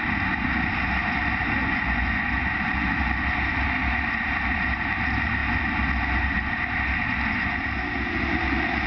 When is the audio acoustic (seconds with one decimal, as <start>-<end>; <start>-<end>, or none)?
0.0-1.6; 2.4-8.9